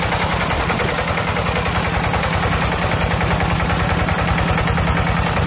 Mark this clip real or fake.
real